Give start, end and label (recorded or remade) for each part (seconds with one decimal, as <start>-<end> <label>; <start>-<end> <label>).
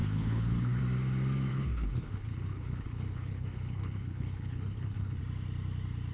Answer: 0.0-0.8 remade; 0.8-1.5 recorded; 1.5-5.2 remade; 5.2-6.1 recorded